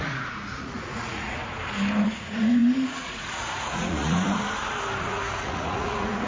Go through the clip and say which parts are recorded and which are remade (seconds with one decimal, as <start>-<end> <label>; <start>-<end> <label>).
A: 0.0-1.4 remade; 1.4-2.0 recorded; 2.0-4.4 remade; 4.4-5.0 recorded; 5.0-6.3 remade